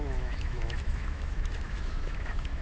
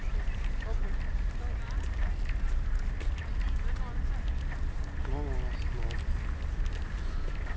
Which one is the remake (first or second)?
first